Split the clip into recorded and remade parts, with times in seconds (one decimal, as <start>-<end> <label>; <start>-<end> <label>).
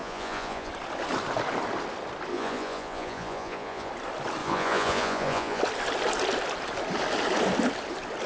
0.0-0.7 remade; 0.7-2.3 recorded; 2.3-3.9 remade; 3.9-4.4 recorded; 4.4-5.6 remade; 5.6-8.3 recorded